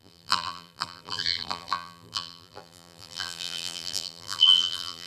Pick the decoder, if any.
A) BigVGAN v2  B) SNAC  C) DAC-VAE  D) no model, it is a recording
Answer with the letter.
A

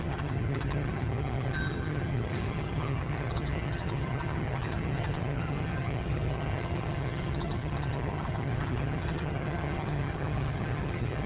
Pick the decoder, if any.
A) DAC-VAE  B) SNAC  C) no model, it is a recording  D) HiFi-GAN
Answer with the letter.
D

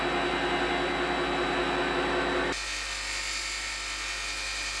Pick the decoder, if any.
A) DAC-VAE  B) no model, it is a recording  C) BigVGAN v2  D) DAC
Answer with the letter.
B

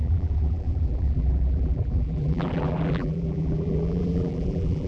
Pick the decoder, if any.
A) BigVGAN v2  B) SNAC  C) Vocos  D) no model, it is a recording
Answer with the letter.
A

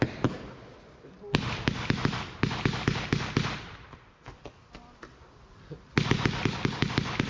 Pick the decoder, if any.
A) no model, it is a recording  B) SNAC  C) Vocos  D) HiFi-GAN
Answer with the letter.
A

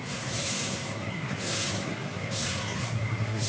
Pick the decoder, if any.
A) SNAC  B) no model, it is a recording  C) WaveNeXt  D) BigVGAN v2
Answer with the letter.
A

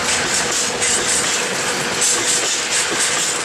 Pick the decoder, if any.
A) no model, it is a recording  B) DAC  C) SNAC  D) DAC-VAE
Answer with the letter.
A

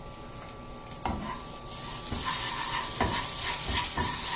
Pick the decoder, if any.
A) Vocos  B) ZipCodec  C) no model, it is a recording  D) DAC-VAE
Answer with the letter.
C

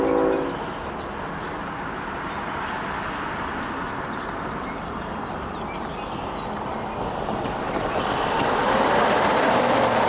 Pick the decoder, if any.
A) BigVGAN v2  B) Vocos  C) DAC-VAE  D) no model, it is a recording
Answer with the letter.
D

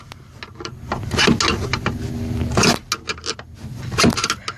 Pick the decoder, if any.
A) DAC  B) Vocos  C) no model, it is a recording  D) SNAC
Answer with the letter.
C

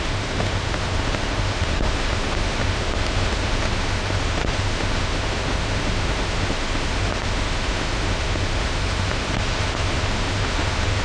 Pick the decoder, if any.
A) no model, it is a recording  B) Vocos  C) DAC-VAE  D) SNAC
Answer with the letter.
C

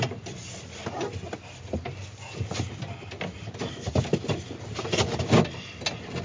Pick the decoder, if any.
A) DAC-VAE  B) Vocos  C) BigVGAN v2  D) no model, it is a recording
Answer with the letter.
D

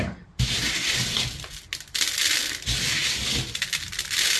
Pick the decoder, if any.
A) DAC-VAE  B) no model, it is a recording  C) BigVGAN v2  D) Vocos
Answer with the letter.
B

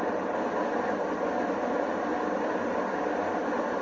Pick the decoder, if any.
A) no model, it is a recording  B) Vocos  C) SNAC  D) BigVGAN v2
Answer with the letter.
A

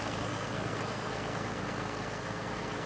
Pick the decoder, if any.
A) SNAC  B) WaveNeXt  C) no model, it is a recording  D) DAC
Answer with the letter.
A